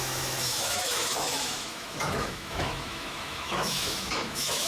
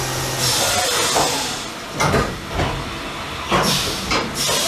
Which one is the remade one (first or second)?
first